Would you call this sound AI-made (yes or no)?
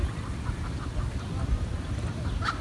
no